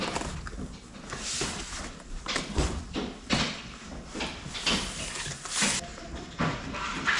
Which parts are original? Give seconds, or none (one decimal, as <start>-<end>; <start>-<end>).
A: 0.0-7.2